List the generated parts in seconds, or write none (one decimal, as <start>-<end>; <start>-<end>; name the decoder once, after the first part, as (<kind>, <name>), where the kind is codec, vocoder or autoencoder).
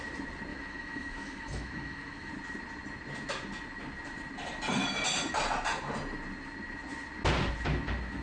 0.5-2.3 (autoencoder, DAC-VAE)